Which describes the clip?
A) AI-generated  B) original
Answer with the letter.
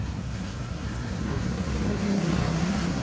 A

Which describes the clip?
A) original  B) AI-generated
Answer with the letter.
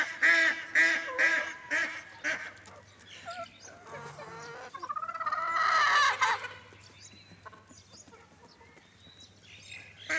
A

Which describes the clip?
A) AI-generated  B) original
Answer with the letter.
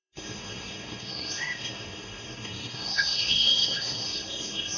A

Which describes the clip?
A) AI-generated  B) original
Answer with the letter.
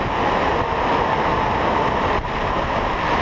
B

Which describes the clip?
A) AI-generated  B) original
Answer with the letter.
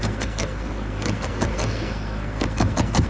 A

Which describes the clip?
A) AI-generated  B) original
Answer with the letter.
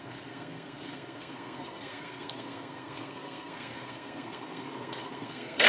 A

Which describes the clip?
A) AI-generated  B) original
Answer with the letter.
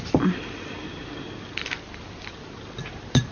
B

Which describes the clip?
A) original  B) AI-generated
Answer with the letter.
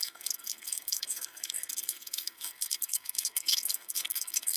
B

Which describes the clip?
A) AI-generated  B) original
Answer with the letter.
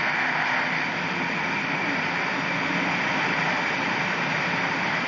B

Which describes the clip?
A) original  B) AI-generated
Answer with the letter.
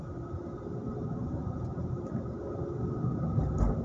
A